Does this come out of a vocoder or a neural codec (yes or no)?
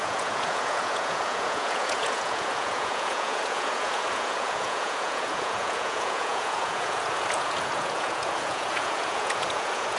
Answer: yes